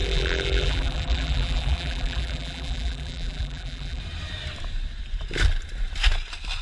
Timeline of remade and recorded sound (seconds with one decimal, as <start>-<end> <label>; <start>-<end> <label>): 0.0-4.0 remade; 4.0-6.6 recorded